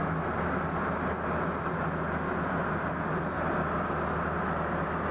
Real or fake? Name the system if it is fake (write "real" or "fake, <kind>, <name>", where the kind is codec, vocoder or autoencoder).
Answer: real